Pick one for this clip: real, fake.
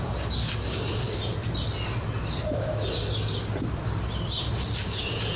real